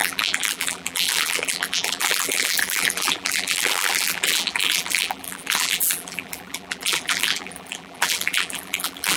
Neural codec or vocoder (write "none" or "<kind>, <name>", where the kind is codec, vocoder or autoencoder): vocoder, BigVGAN v2